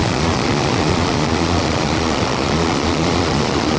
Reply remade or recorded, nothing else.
remade